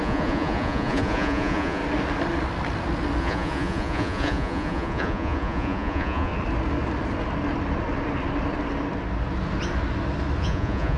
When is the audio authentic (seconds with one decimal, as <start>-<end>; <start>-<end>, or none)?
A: 1.8-3.2; 6.3-10.4